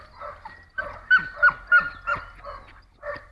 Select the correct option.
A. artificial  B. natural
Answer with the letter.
B